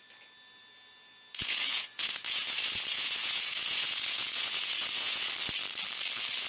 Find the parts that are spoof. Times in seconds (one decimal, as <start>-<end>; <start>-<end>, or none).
1.4-5.3